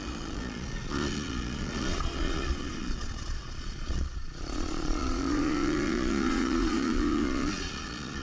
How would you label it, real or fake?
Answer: fake